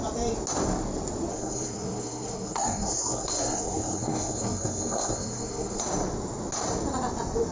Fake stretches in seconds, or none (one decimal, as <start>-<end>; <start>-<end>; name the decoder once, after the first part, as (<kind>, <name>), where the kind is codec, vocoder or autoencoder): 1.3-5.8 (codec, SNAC)